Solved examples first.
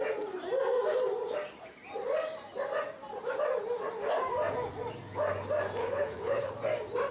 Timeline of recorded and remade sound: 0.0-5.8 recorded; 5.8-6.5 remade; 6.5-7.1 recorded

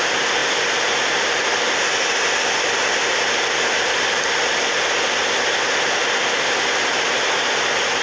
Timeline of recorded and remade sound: 0.0-8.0 recorded

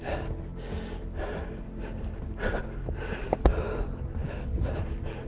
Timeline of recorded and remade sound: 0.0-4.2 recorded; 4.2-4.7 remade; 4.7-5.3 recorded